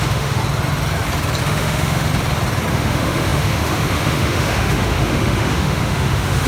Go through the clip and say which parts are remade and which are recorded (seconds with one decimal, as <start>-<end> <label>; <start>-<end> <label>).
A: 0.0-0.4 remade; 0.4-1.4 recorded; 1.4-2.1 remade; 2.1-2.7 recorded; 2.7-6.5 remade